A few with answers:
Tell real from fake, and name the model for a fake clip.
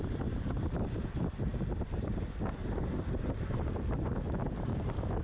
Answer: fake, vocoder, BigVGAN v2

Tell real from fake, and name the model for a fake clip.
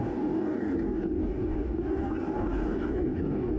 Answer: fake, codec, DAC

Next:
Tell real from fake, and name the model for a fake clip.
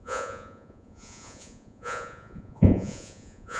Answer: fake, vocoder, Vocos